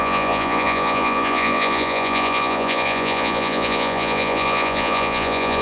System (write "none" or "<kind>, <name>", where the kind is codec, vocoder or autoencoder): vocoder, Vocos